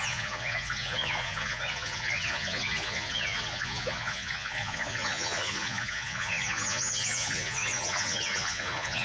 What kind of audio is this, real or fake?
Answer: fake